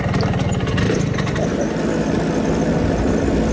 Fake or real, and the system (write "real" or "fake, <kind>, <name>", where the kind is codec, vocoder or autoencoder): real